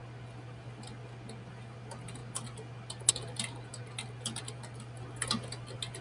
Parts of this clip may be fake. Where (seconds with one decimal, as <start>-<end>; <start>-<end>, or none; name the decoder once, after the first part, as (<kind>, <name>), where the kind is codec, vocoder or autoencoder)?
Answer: none